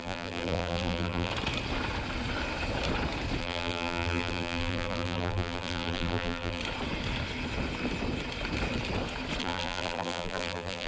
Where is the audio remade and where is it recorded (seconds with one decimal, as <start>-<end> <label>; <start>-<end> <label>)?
0.0-1.3 remade; 1.3-3.4 recorded; 3.4-6.6 remade; 6.6-9.4 recorded; 9.4-10.9 remade